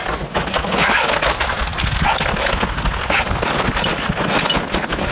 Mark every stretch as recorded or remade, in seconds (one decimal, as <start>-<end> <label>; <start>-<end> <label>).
0.0-5.1 recorded